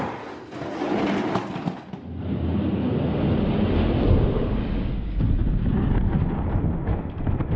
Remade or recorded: recorded